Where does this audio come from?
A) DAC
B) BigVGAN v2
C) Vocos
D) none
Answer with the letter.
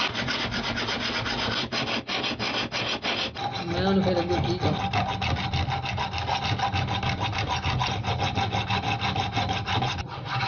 D